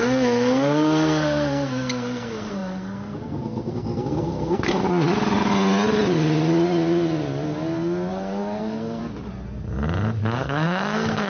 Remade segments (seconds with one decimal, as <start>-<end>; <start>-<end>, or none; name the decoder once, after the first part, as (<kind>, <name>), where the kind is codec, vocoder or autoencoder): 0.0-4.8 (codec, SNAC); 8.1-9.0; 10.2-11.3